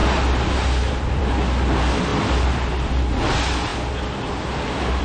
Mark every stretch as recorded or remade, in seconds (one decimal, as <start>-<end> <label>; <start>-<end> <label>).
0.0-5.0 recorded